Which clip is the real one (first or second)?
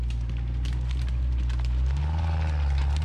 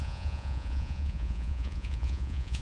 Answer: first